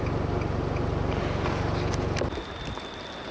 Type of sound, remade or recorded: recorded